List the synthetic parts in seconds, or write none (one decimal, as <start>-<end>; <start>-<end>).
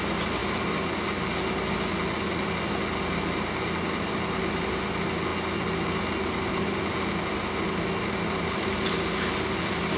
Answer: none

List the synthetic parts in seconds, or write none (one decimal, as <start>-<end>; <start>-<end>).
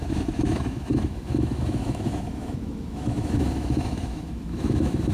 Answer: 0.0-5.1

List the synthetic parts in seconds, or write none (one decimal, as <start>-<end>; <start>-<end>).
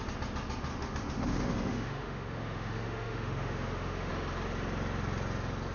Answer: 0.7-4.1